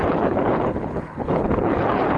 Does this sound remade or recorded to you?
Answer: remade